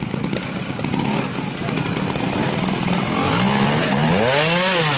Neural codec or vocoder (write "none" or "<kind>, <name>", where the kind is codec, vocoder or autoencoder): none